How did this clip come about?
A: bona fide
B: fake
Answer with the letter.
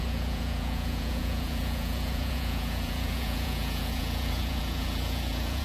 B